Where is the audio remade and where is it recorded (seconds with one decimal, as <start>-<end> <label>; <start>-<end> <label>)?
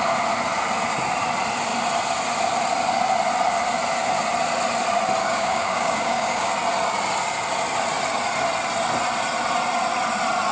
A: 0.0-5.2 recorded; 5.2-6.5 remade; 6.5-10.5 recorded